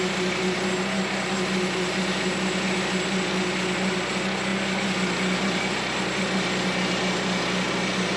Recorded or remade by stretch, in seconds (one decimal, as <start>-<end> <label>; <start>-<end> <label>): 0.0-8.2 recorded